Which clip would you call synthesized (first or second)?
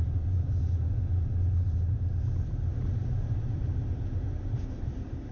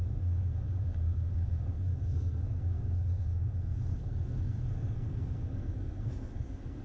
second